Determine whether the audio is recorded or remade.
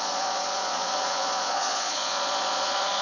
remade